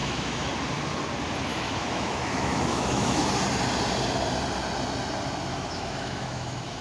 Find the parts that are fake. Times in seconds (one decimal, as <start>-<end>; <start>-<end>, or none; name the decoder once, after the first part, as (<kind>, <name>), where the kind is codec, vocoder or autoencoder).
0.0-0.5 (autoencoder, DAC-VAE); 1.5-3.3; 5.5-6.8